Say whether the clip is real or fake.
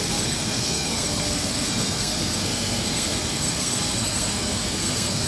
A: fake